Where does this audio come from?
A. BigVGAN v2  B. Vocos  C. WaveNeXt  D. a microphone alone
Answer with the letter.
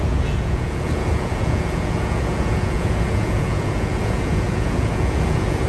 B